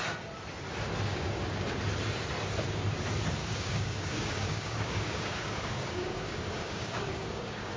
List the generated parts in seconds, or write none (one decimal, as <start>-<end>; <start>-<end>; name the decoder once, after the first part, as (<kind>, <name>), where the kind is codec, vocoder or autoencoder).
1.1-1.8 (codec, DAC); 3.4-7.8